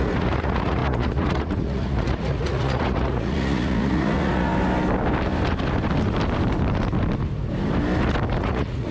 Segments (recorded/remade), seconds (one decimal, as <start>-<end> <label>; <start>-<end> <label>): 0.0-4.5 remade; 4.5-8.4 recorded; 8.4-8.9 remade